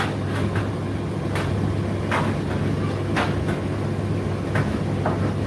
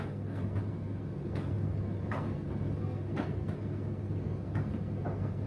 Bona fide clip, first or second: first